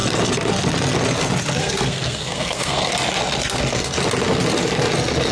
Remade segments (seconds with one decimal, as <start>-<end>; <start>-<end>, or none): 1.6-2.9